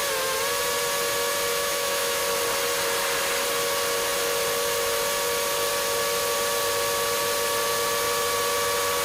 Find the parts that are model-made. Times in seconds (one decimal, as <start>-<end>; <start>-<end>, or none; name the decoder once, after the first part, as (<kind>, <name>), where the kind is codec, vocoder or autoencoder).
1.5-2.2 (autoencoder, DAC-VAE)